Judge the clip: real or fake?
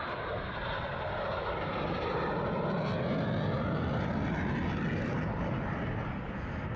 real